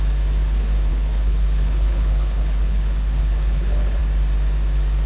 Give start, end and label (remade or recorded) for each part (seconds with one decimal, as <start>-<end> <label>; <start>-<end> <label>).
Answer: 0.0-0.9 recorded; 0.9-4.0 remade; 4.0-5.1 recorded